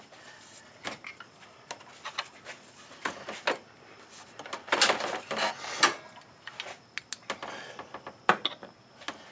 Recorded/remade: recorded